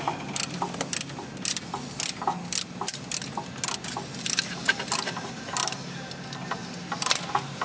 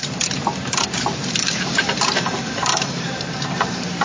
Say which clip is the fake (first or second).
second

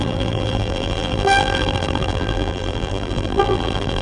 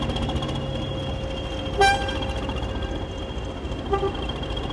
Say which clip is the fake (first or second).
first